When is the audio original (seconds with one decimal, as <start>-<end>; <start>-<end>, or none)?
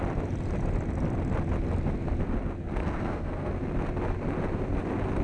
0.0-2.8; 3.5-5.2